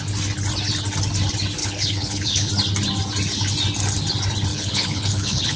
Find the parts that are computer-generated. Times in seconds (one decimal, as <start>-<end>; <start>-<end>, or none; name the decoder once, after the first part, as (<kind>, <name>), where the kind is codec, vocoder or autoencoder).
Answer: 1.6-2.5 (codec, HILCodec); 4.5-5.6